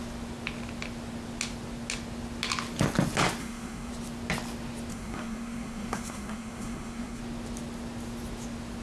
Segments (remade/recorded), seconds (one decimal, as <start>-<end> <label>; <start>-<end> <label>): 0.0-3.4 recorded; 3.4-3.9 remade; 3.9-4.9 recorded; 4.9-7.2 remade; 7.2-8.8 recorded